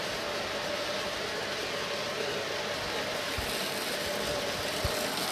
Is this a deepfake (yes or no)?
no